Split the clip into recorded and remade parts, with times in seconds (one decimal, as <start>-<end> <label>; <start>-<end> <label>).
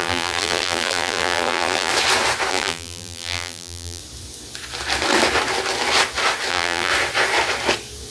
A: 0.0-1.9 remade; 1.9-2.5 recorded; 2.5-4.0 remade; 4.0-6.5 recorded; 6.5-6.9 remade; 6.9-8.1 recorded